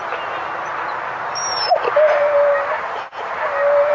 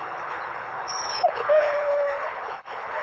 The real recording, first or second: first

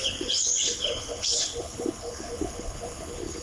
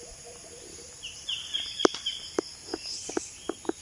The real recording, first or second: second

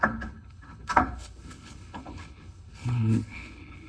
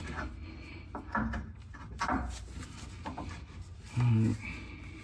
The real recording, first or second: second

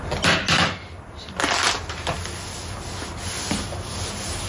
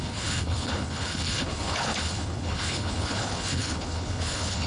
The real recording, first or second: first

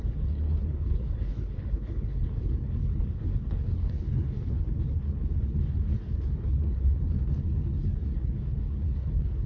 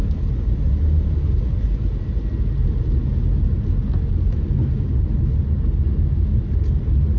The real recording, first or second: second